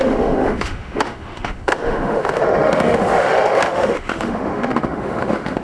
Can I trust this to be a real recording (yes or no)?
no